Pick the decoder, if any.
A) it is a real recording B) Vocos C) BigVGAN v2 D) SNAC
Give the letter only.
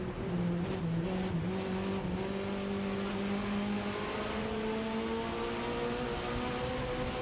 A